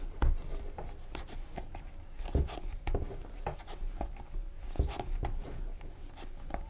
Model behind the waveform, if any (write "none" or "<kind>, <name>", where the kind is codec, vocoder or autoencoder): none